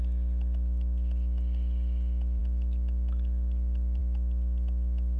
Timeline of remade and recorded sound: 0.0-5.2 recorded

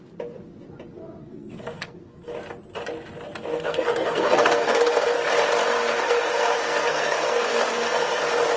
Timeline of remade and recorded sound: 0.0-1.2 recorded; 1.2-2.3 remade; 2.3-3.5 recorded; 3.5-5.1 remade; 5.1-5.7 recorded; 5.7-8.2 remade; 8.2-8.6 recorded

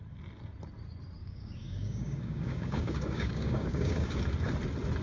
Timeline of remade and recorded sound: 0.0-1.2 recorded; 1.2-4.2 remade; 4.2-5.0 recorded